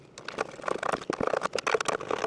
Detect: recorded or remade recorded